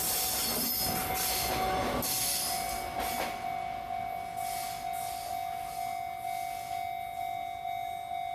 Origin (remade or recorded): recorded